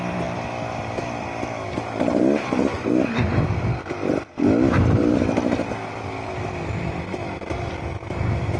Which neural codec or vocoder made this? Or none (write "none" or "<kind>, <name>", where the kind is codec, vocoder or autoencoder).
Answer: none